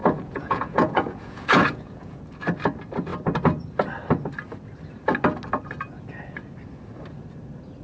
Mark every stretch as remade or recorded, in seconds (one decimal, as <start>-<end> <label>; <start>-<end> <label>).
0.0-2.2 remade; 2.2-7.8 recorded